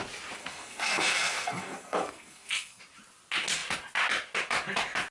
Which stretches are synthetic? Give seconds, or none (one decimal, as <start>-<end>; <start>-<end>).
0.4-2.8